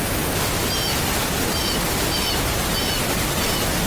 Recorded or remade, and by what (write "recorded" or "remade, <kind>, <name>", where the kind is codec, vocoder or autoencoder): recorded